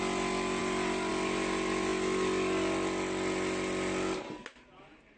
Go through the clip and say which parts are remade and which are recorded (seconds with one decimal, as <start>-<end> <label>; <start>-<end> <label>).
0.0-5.2 recorded